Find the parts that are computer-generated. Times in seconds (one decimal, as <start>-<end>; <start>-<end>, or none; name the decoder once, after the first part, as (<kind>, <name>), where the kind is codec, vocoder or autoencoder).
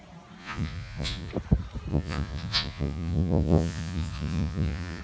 0.4-1.3 (vocoder, Vocos); 1.9-5.0